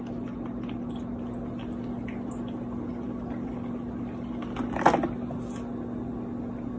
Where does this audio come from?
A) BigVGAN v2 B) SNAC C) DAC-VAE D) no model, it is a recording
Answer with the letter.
D